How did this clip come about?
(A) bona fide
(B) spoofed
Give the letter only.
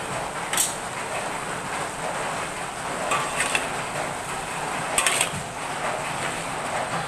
A